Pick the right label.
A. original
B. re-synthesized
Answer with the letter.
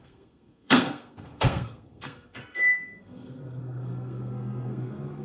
B